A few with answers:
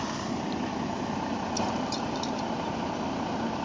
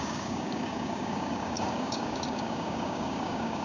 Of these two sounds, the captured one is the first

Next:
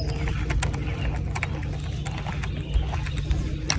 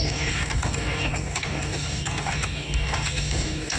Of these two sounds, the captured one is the first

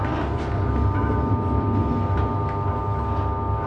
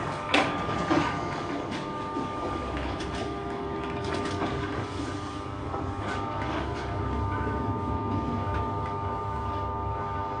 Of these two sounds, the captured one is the first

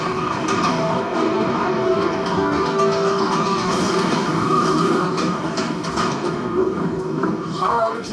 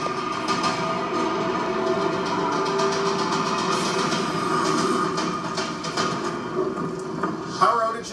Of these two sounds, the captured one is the second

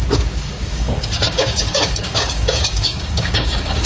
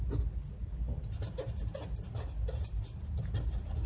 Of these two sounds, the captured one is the second